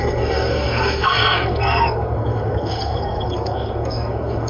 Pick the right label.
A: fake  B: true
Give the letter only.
A